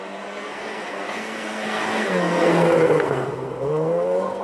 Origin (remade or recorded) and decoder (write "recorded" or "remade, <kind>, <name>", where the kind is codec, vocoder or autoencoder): remade, codec, SNAC